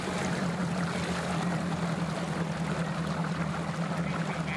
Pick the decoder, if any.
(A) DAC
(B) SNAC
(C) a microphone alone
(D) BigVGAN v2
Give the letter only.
C